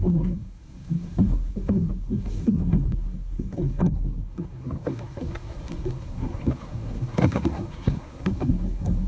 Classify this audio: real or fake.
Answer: fake